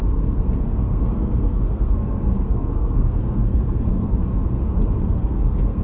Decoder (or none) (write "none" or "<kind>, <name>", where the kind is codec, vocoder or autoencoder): codec, SNAC